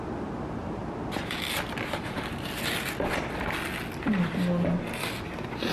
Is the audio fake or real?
real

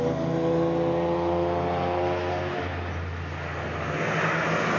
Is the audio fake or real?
real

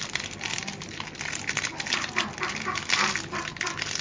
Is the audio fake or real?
real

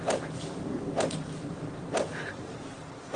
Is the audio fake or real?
real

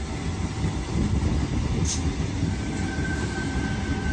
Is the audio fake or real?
real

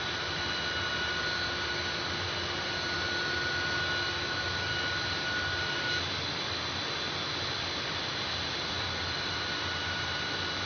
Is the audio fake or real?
real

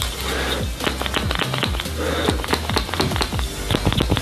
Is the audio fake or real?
real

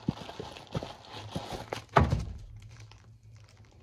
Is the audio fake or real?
real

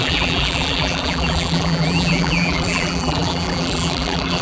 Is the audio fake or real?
fake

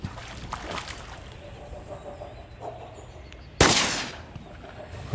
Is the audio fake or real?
real